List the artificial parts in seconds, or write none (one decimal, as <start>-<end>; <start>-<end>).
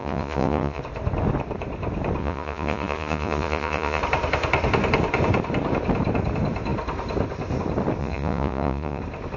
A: 0.0-0.8; 2.2-4.0; 8.0-9.0